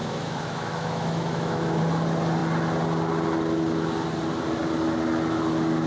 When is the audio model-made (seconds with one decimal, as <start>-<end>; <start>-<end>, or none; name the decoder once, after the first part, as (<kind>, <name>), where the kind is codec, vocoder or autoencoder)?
0.0-1.8 (autoencoder, DAC-VAE)